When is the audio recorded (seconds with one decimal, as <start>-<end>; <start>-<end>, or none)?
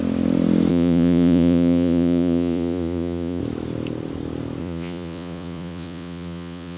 0.0-0.7; 3.4-4.6